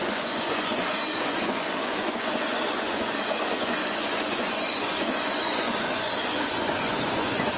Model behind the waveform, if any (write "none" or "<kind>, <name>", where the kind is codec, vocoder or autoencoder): vocoder, Vocos